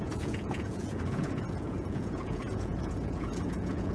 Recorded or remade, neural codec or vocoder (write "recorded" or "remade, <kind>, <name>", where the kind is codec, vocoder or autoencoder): remade, vocoder, Vocos